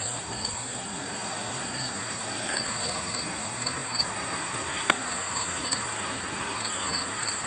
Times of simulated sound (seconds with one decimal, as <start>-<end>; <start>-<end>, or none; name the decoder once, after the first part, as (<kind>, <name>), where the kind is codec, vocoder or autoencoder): 0.0-7.5 (codec, SNAC)